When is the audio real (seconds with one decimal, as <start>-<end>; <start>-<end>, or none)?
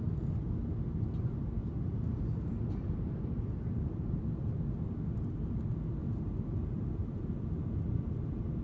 0.0-1.6; 4.2-6.0; 7.3-8.6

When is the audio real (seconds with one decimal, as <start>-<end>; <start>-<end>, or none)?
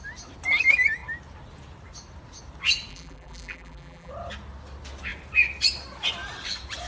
0.0-2.9; 4.1-6.9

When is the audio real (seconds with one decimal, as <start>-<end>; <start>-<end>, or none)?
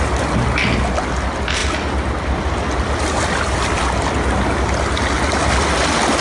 0.0-6.2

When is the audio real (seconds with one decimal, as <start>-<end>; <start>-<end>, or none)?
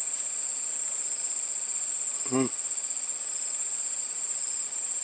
0.0-5.0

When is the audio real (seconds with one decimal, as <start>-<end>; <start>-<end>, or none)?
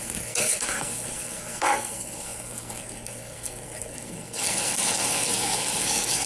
none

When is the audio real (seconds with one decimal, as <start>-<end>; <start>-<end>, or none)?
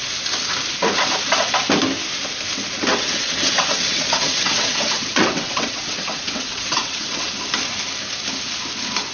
0.0-2.9; 7.3-9.1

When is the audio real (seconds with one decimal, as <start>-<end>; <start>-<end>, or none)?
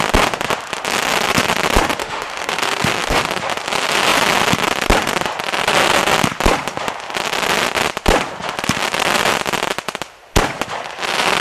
0.0-2.0; 3.2-11.4